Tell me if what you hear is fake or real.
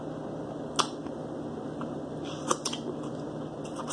real